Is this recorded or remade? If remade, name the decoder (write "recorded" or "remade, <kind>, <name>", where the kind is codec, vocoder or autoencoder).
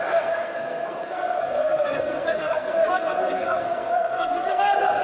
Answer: remade, codec, SNAC